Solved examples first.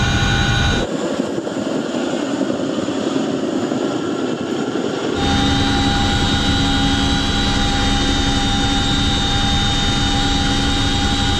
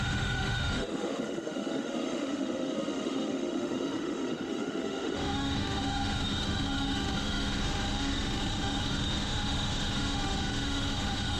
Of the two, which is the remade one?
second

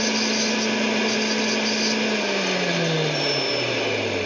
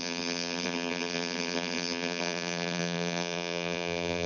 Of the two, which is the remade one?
second